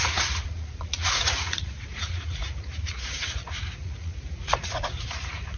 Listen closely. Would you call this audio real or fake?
fake